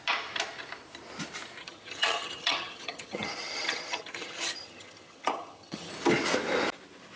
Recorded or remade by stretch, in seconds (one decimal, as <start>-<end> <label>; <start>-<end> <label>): 0.0-1.6 recorded; 1.6-5.9 remade; 5.9-7.2 recorded